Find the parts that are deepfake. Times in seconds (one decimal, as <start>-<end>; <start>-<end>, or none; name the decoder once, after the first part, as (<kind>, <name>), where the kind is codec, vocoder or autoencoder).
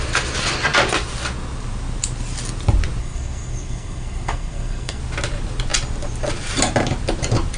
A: 3.0-5.0 (codec, SNAC)